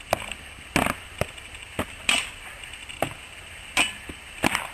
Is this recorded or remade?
recorded